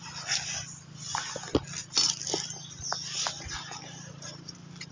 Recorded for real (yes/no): yes